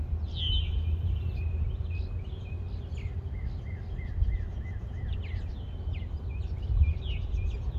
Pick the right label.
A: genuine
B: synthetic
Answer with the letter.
A